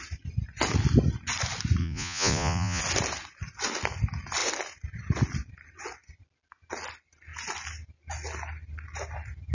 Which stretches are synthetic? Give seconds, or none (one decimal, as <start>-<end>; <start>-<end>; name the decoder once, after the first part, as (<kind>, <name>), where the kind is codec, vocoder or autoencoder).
1.8-2.8 (vocoder, Vocos)